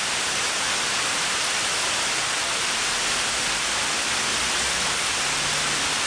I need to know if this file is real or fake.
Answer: real